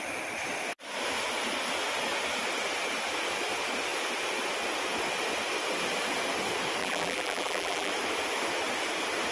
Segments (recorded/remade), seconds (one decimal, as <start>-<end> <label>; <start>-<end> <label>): 0.0-6.8 recorded; 6.8-7.9 remade; 7.9-9.3 recorded